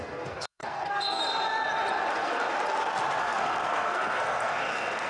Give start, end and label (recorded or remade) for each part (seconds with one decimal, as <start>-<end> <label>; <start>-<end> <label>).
0.0-1.2 remade; 1.2-2.1 recorded; 2.1-2.5 remade; 2.5-3.2 recorded; 3.2-5.1 remade